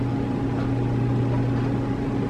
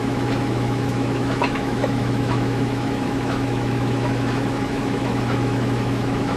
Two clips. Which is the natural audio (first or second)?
first